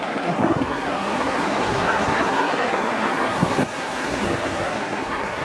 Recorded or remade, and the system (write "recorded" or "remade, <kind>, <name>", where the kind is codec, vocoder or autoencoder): remade, codec, SNAC